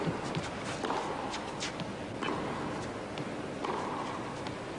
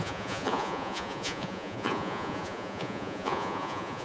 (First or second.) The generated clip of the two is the second